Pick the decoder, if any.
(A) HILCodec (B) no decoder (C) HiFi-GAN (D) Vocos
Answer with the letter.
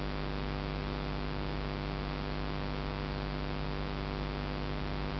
B